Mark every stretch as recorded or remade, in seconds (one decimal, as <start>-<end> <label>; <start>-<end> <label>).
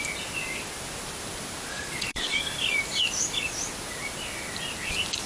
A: 0.0-1.7 recorded; 1.7-2.4 remade; 2.4-5.3 recorded